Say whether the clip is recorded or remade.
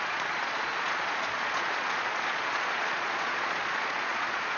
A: remade